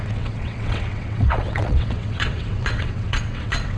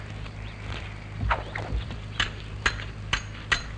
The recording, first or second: second